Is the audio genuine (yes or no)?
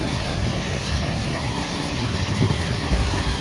no